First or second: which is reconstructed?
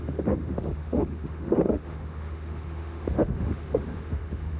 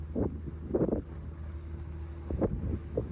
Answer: first